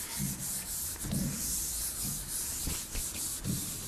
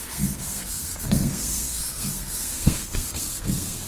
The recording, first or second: first